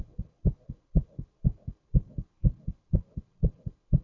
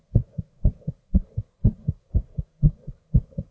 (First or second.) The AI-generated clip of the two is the second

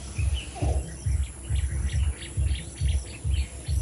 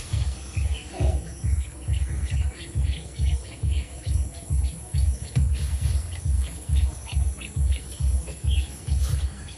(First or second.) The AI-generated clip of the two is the second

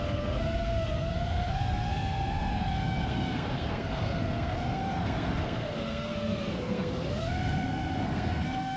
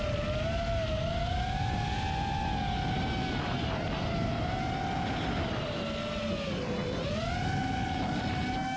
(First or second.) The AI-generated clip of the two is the first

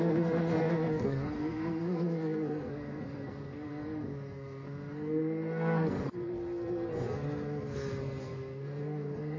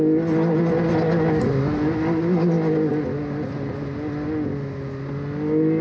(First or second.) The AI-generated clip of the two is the first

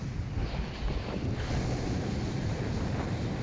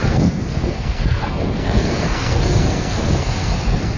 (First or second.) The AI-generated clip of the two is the second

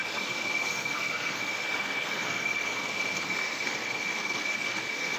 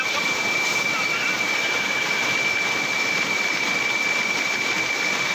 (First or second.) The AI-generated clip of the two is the first